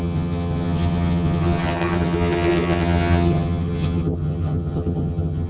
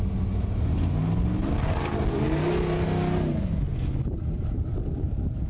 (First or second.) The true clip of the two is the second